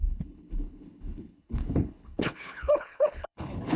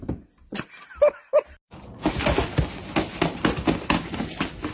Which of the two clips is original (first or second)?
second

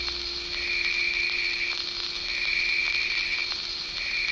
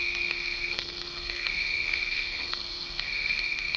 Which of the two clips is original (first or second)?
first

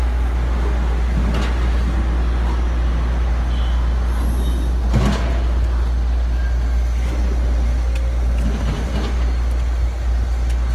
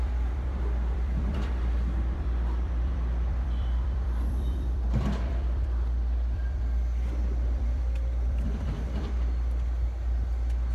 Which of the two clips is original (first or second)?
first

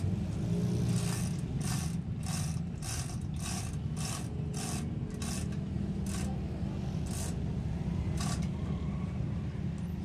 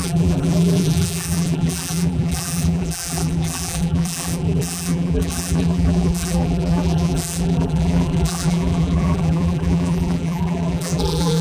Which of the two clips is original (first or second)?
first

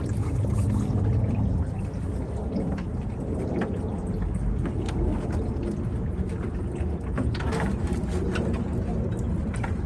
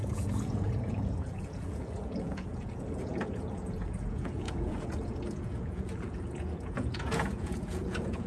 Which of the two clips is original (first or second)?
first